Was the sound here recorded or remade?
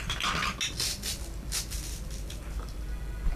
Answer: recorded